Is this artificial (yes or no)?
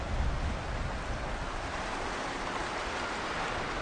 no